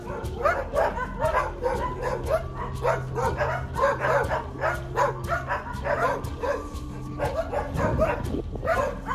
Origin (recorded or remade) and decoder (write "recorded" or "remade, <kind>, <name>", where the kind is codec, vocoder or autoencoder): recorded